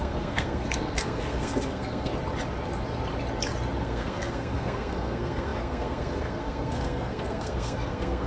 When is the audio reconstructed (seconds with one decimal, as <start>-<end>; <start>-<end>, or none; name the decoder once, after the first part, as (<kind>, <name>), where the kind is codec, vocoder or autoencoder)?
0.0-2.1 (codec, SNAC); 3.8-8.3